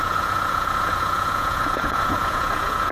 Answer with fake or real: fake